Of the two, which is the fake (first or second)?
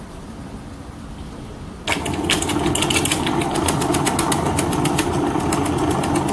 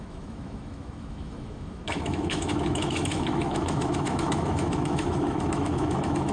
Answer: second